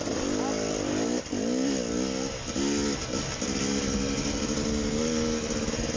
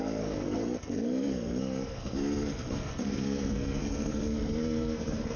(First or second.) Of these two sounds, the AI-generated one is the second